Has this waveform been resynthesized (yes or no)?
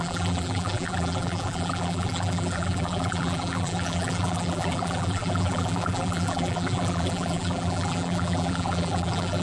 yes